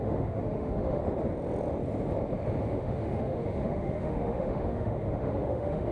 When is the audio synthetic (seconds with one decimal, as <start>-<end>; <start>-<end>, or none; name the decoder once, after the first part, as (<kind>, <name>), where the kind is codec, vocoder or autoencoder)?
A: 0.0-1.0 (autoencoder, DAC-VAE); 2.6-5.9